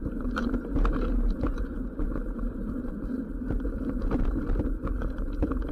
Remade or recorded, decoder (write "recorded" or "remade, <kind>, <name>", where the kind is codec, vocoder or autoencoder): remade, vocoder, BigVGAN v2